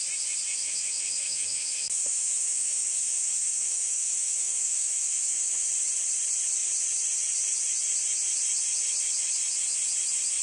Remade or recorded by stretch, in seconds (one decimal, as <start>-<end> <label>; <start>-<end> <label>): 0.0-0.5 recorded; 0.5-5.7 remade; 5.7-10.4 recorded